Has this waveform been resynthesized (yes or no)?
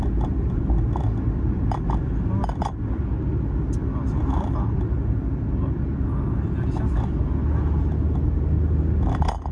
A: no